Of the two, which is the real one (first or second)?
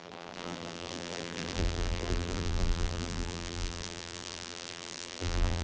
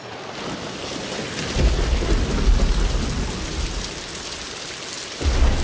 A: second